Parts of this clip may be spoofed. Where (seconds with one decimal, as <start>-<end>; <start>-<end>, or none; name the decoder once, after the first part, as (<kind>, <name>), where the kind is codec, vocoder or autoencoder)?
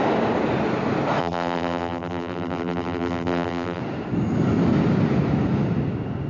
1.2-3.8 (vocoder, BigVGAN v2)